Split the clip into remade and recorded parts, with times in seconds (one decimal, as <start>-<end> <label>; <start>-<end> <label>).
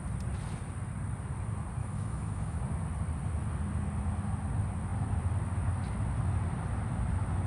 0.0-1.8 recorded; 1.8-2.6 remade; 2.6-7.5 recorded